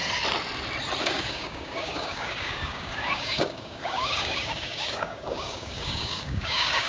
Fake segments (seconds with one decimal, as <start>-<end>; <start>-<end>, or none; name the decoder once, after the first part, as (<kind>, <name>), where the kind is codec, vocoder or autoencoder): 1.0-6.9 (codec, DAC)